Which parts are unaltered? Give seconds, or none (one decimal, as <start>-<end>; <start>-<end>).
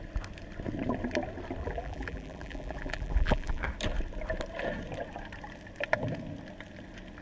0.0-1.6; 3.6-7.2